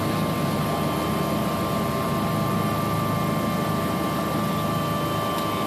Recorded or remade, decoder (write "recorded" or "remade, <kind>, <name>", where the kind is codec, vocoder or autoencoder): recorded